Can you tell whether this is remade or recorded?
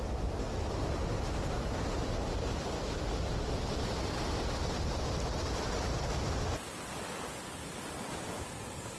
recorded